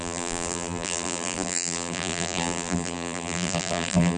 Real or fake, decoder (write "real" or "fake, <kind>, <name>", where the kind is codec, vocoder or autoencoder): fake, vocoder, BigVGAN v2